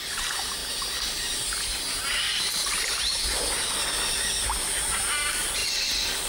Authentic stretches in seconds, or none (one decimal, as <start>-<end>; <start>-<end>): 0.0-6.3